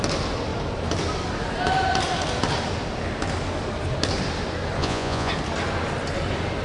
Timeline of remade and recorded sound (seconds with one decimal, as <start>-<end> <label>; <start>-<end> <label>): 0.0-4.8 recorded; 4.8-5.3 remade; 5.3-6.6 recorded